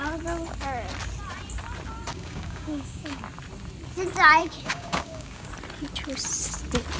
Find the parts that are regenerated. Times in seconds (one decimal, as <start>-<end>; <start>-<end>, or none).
2.1-3.2; 4.4-5.5